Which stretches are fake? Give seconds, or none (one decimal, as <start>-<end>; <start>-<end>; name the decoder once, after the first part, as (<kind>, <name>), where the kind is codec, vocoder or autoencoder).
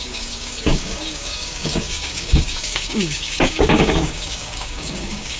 0.0-5.4 (codec, DAC)